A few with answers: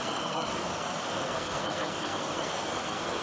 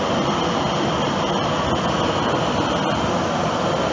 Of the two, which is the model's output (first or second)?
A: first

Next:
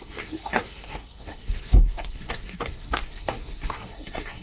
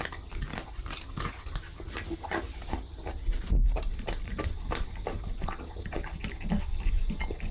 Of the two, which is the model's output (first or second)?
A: first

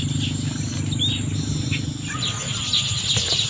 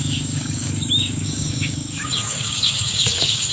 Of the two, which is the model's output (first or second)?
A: second